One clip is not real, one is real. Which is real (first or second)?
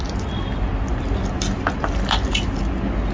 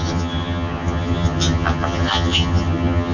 first